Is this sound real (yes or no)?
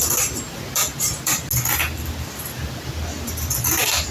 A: yes